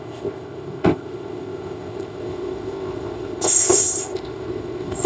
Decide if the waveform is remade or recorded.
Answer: remade